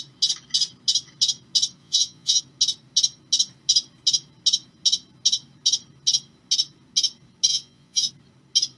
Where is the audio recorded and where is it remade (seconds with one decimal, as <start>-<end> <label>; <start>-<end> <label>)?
0.0-1.8 recorded; 1.8-2.4 remade; 2.4-7.5 recorded; 7.5-8.1 remade; 8.1-8.8 recorded